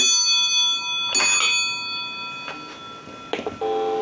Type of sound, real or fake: real